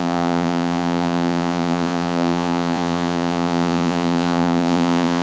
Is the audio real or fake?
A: fake